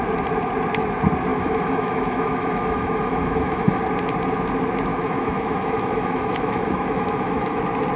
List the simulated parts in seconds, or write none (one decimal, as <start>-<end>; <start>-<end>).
1.3-3.8; 4.9-7.6